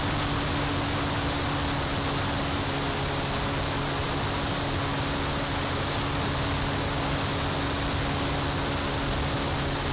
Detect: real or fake real